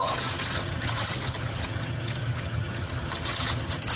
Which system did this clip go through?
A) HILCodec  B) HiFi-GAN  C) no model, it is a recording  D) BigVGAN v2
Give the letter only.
B